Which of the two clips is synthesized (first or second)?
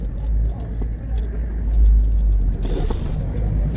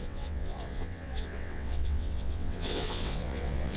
second